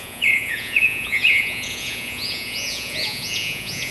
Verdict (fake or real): fake